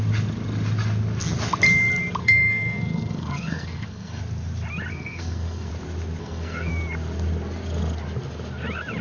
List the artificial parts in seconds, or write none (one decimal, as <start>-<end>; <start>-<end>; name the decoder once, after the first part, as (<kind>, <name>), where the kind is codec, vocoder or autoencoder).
2.2-4.2 (codec, SNAC); 4.9-5.7; 6.2-6.7